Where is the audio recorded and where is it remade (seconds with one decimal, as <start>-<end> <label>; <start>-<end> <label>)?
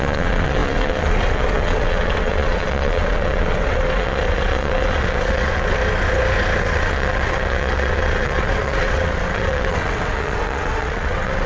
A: 0.0-5.8 remade; 5.8-6.6 recorded; 6.6-11.5 remade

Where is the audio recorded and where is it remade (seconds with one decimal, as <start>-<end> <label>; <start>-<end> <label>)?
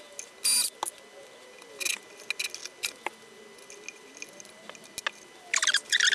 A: 0.0-6.1 recorded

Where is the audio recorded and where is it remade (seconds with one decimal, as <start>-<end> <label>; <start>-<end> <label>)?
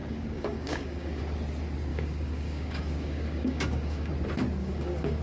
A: 0.0-1.2 remade; 1.2-1.9 recorded; 1.9-4.1 remade; 4.1-4.6 recorded; 4.6-5.2 remade